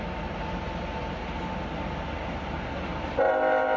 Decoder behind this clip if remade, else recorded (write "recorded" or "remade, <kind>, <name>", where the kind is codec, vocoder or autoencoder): recorded